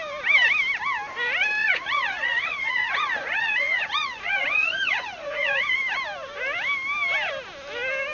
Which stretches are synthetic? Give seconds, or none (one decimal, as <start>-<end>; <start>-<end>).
1.6-5.8